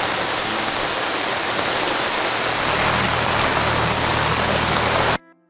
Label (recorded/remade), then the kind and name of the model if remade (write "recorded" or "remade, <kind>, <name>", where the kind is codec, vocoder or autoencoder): recorded